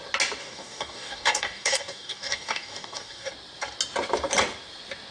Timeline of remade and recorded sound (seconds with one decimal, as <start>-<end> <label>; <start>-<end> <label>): 0.0-0.4 recorded; 0.4-3.3 remade; 3.3-5.1 recorded